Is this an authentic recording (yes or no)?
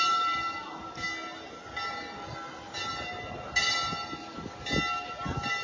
yes